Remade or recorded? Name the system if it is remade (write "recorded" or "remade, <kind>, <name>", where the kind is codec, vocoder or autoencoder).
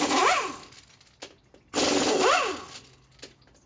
recorded